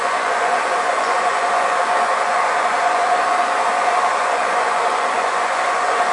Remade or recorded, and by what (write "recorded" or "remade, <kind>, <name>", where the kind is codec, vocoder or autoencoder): remade, vocoder, Vocos